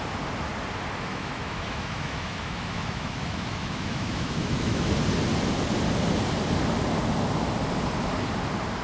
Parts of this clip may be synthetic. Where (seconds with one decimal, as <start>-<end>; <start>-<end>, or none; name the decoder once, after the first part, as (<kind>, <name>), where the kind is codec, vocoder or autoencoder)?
1.1-4.9 (autoencoder, DAC-VAE)